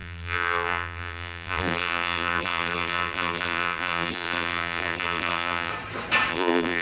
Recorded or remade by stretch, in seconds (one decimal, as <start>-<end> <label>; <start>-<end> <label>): 0.0-5.7 remade; 5.7-6.3 recorded; 6.3-6.8 remade